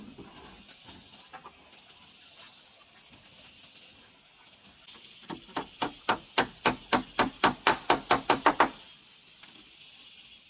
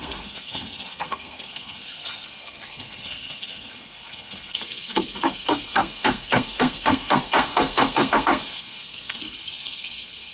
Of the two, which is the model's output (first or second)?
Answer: second